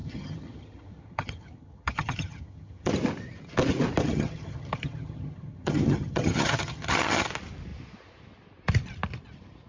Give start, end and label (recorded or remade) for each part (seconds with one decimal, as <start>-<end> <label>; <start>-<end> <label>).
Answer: 0.0-2.9 remade; 2.9-4.0 recorded; 4.0-7.3 remade; 7.3-9.7 recorded